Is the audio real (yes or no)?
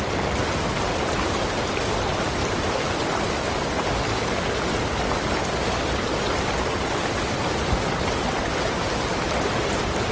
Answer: yes